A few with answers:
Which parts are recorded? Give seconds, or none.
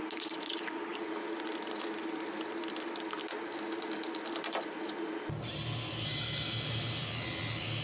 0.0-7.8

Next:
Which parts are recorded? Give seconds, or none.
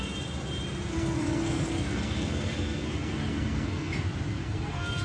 0.0-0.9; 3.9-4.3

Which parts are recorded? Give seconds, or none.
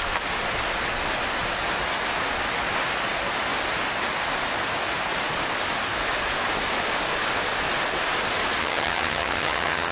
0.0-8.6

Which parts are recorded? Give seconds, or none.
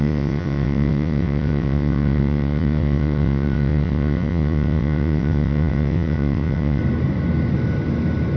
6.8-8.4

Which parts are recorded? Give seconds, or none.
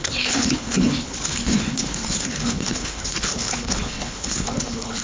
none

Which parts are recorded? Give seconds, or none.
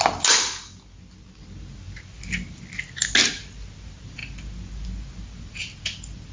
0.0-6.3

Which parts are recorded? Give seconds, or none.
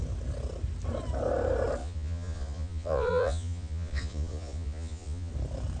0.0-1.8; 5.3-5.8